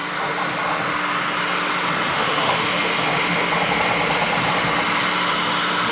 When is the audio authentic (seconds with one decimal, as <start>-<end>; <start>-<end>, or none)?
0.0-2.1; 2.8-5.9